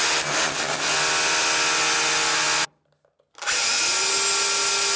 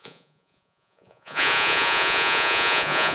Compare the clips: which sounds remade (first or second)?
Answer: second